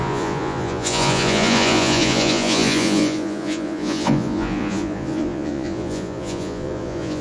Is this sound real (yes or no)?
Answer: no